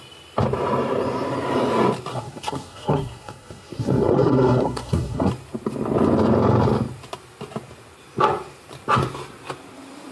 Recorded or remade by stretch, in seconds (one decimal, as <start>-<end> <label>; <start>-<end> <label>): 0.0-2.1 recorded; 2.1-5.3 remade; 5.3-10.1 recorded